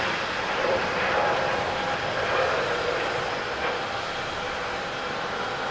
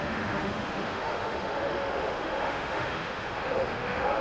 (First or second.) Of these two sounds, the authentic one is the first